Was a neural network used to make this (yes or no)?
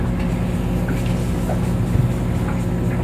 no